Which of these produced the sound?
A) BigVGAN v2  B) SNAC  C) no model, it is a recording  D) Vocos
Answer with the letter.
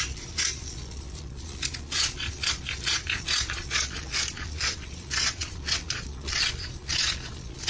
D